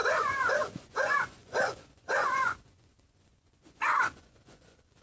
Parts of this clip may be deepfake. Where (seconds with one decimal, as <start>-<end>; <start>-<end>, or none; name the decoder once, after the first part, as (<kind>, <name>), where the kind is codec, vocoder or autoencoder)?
0.0-5.0 (vocoder, Vocos)